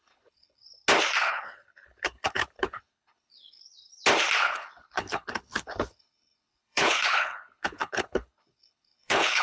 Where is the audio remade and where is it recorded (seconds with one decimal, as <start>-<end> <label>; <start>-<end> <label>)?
0.0-0.6 remade; 0.6-1.2 recorded; 1.2-3.6 remade; 3.6-4.4 recorded; 4.4-9.4 remade